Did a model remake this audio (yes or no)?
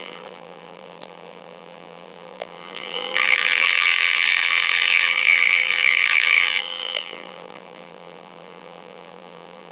yes